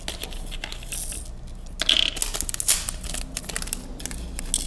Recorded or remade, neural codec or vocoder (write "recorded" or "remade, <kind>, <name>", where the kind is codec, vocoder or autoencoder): recorded